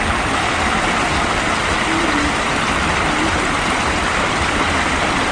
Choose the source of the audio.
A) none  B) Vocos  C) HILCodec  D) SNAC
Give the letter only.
A